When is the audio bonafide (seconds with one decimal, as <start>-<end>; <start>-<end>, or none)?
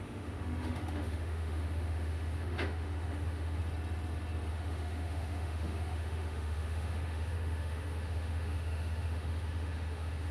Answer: 3.6-4.5